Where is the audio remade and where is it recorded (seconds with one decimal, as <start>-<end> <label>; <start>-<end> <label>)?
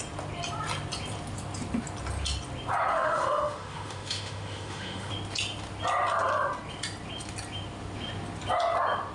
0.0-2.9 recorded; 2.9-5.1 remade; 5.1-9.1 recorded